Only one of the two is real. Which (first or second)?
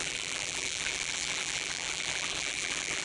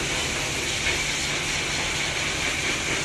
second